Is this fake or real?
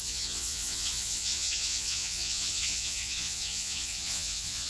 fake